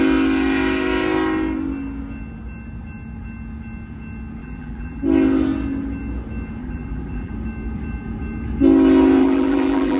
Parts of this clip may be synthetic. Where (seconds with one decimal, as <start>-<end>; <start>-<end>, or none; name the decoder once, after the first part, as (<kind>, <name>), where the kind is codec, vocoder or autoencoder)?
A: 4.4-5.0 (vocoder, BigVGAN v2); 6.6-7.3; 9.2-10.0